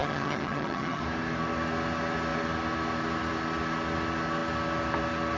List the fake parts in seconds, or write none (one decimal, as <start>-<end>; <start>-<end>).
0.0-1.0